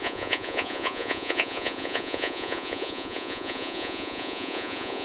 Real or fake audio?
fake